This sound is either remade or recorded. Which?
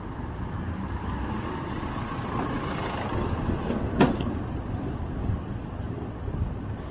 recorded